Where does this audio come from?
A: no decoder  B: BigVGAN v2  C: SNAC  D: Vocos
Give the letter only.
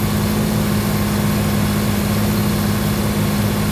A